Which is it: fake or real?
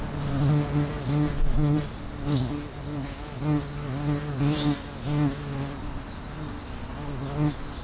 real